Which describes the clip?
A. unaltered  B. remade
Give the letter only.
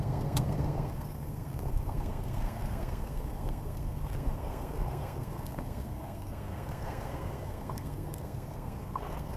B